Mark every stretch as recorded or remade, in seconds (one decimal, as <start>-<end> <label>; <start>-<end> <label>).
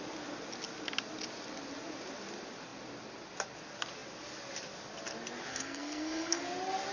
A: 0.0-5.5 recorded; 5.5-6.4 remade; 6.4-6.9 recorded